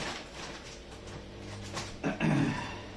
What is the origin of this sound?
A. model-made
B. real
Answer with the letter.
A